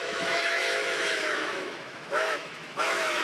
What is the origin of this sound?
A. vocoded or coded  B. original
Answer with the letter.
A